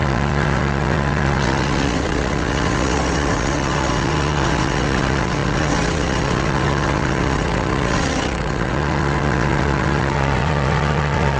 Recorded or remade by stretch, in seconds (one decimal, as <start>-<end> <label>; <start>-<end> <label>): 0.0-11.4 remade